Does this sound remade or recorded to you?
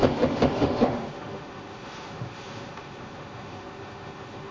remade